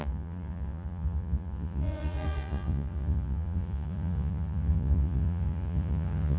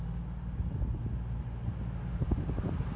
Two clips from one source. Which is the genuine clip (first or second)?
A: second